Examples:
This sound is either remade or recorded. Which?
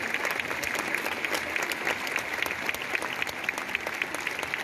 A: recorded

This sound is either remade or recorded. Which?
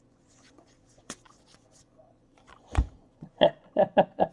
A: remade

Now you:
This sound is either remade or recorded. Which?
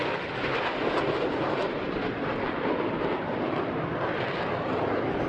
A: remade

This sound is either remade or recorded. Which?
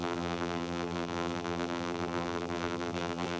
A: remade